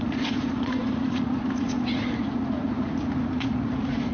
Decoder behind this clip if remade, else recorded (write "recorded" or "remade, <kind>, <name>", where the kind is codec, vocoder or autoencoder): remade, vocoder, Vocos